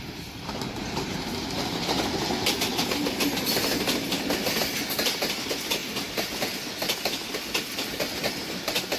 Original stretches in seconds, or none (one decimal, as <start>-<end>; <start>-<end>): 0.0-2.7; 3.4-9.0